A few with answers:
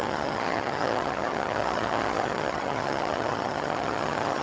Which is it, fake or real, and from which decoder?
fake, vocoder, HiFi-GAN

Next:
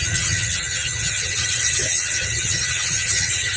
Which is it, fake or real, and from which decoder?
fake, vocoder, HiFi-GAN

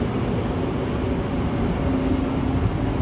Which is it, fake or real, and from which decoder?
real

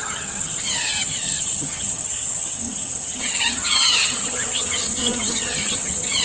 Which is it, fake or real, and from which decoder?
fake, vocoder, HiFi-GAN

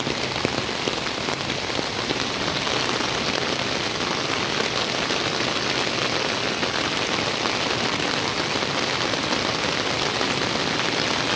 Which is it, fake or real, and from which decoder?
real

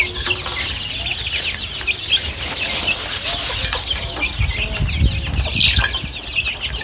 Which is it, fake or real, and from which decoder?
real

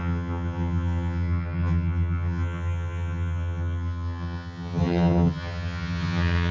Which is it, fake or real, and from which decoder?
fake, vocoder, HiFi-GAN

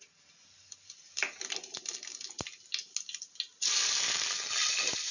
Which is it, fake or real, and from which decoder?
real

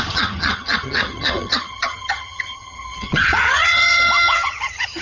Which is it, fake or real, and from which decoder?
fake, vocoder, HiFi-GAN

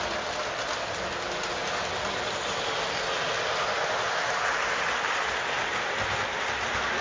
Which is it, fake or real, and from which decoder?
real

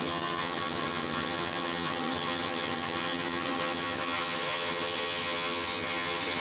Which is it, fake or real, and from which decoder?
fake, vocoder, HiFi-GAN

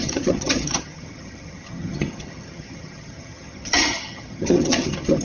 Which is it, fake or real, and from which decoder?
fake, vocoder, HiFi-GAN